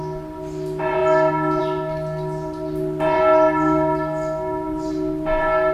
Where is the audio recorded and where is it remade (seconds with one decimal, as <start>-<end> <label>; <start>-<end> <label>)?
0.0-5.7 recorded